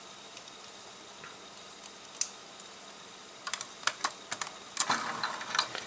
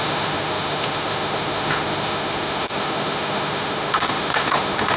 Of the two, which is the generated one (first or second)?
second